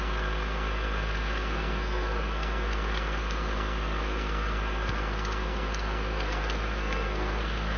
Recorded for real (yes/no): no